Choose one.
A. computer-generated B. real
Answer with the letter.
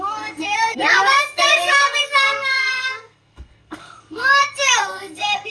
A